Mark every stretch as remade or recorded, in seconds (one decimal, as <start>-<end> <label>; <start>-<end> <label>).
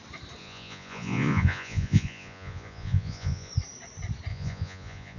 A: 0.0-0.4 recorded; 0.4-3.5 remade; 3.5-4.3 recorded; 4.3-5.2 remade